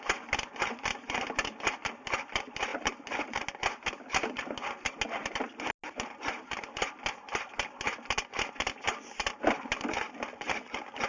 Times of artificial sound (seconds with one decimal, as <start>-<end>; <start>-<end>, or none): none